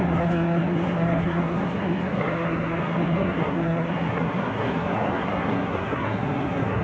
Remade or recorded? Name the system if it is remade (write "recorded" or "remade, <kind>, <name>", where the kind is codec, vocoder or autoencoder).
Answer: remade, codec, SNAC